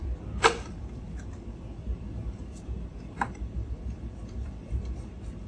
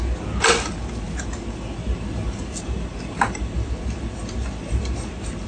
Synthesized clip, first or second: first